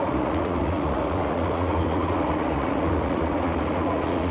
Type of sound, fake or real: fake